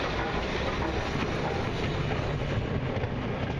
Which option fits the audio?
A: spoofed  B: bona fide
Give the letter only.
B